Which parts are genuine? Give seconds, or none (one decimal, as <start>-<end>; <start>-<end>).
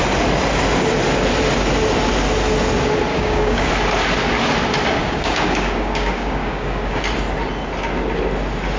0.0-3.1; 3.7-5.0; 7.0-8.8